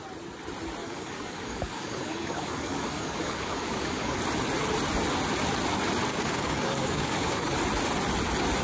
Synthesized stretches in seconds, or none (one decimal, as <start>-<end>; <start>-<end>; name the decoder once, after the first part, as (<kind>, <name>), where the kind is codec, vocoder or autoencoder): 0.8-4.2 (codec, DAC); 6.1-7.6

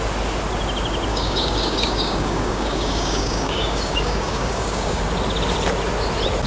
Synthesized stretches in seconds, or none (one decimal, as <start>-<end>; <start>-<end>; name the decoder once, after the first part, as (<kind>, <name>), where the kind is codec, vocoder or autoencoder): 1.1-5.0 (codec, DAC)

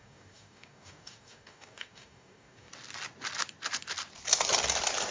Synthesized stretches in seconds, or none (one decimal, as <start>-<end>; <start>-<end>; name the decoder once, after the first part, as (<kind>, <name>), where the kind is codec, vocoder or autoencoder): 0.0-2.7 (codec, DAC)

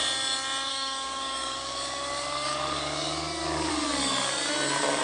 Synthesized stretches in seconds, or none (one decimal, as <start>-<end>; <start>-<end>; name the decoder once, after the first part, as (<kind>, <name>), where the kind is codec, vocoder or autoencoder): 0.7-3.7 (codec, DAC)

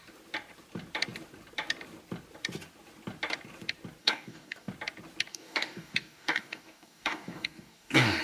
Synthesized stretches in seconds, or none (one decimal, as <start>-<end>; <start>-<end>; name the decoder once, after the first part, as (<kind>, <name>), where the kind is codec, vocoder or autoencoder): 4.0-4.7 (codec, DAC); 5.3-8.2

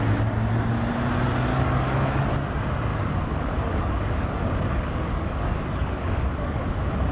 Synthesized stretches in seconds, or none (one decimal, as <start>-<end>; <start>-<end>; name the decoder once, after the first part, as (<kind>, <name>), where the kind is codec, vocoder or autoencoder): 1.5-2.2 (codec, DAC); 2.9-6.6

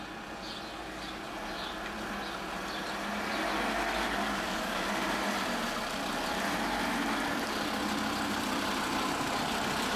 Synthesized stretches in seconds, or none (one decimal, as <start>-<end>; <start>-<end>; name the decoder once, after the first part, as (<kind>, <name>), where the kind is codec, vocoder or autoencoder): 4.2-4.9 (codec, DAC)